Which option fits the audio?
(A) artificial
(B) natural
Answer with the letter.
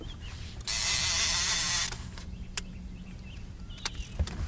B